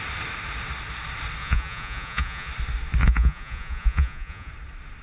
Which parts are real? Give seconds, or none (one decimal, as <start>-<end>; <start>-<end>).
0.0-1.4; 2.5-3.0; 4.5-5.0